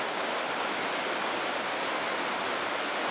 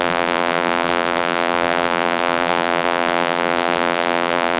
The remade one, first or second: second